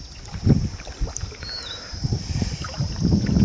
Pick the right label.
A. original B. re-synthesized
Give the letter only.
A